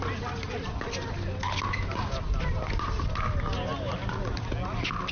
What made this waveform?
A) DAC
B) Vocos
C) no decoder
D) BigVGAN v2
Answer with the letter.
C